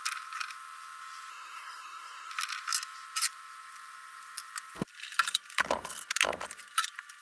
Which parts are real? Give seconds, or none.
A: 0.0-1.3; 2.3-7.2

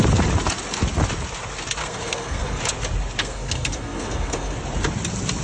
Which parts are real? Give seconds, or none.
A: 0.0-1.8; 2.6-3.2; 4.6-5.4

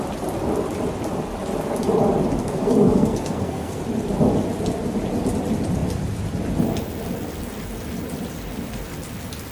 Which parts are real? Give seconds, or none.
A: 0.0-2.4; 3.8-9.5